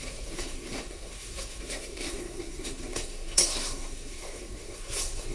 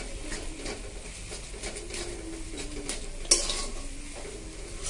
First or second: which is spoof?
first